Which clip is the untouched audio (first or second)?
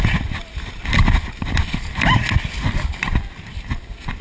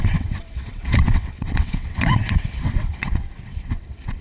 first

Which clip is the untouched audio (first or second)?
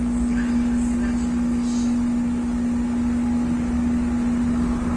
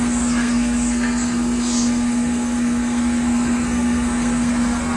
first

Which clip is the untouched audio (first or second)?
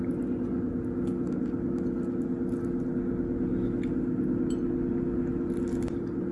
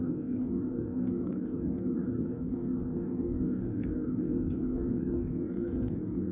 first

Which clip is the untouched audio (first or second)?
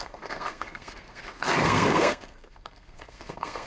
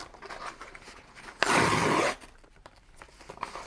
second